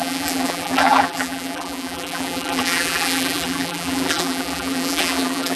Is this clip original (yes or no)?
no